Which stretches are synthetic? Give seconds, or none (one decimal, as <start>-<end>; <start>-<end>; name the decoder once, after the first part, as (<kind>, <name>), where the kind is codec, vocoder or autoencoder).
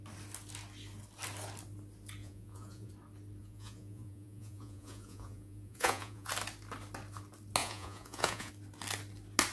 2.2-2.9 (vocoder, Vocos); 3.4-6.3; 7.6-8.5